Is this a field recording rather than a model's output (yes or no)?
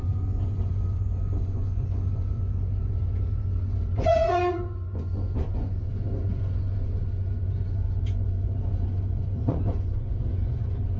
no